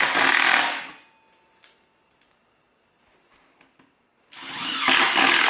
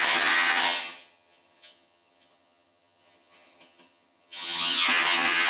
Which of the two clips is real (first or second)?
first